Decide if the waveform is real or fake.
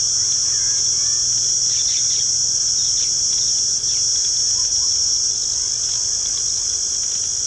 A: real